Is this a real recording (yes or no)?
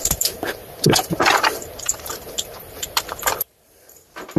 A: no